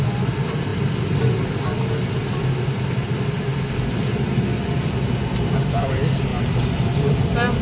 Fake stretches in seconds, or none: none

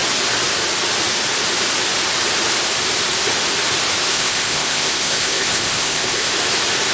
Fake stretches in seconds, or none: 4.1-6.3 (codec, ZipCodec)

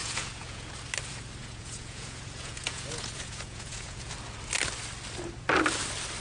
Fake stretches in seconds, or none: 0.0-0.7 (vocoder, Vocos); 1.4-4.1

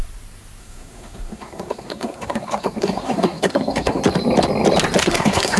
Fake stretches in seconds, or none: 0.6-4.0 (codec, SNAC); 5.0-5.6

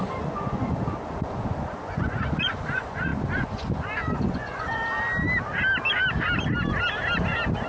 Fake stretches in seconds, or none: 0.0-4.8 (vocoder, Vocos)

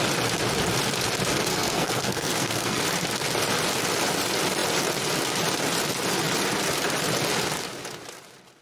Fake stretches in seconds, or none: 1.5-2.8 (codec, SNAC)